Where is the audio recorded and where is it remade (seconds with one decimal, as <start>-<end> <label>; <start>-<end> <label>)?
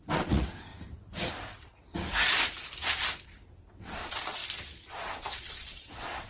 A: 0.0-0.7 remade; 0.7-3.7 recorded; 3.7-4.4 remade; 4.4-4.9 recorded; 4.9-6.3 remade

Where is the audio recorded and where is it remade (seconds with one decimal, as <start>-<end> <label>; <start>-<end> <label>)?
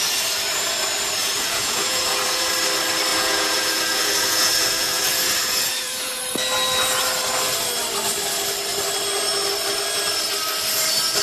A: 0.0-1.2 recorded; 1.2-2.5 remade; 2.5-3.1 recorded; 3.1-6.2 remade; 6.2-11.2 recorded